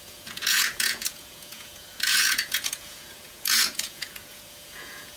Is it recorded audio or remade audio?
remade